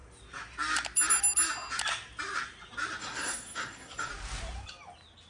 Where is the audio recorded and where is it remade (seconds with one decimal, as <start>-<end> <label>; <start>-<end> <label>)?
0.0-3.0 recorded; 3.0-4.1 remade; 4.1-5.3 recorded